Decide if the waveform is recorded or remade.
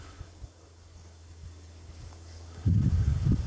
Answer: remade